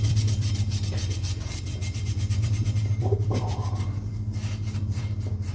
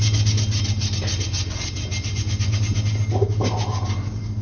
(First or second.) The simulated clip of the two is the first